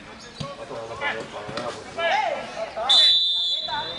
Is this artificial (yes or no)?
no